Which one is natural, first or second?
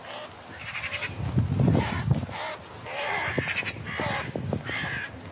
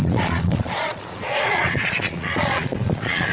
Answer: first